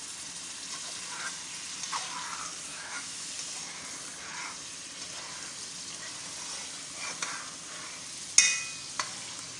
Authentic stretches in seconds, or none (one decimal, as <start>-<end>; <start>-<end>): 0.0-2.7; 3.3-9.6